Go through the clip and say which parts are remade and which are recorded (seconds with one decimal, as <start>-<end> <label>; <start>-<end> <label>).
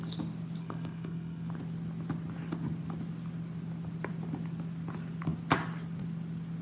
0.0-0.6 recorded; 0.6-1.5 remade; 1.5-6.6 recorded